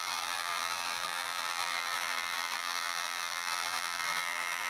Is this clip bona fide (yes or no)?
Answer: no